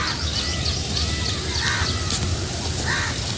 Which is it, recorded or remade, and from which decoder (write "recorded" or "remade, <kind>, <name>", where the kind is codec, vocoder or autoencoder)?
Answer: recorded